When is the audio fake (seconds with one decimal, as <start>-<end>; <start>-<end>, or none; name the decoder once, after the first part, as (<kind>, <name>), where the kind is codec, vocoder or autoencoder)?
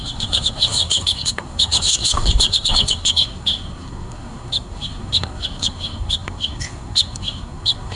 0.0-8.0 (codec, SNAC)